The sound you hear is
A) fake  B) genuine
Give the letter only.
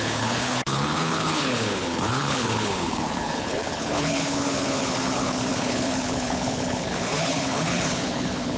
A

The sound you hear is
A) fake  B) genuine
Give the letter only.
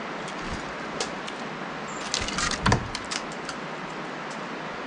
B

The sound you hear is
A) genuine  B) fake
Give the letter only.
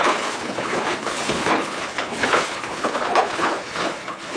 B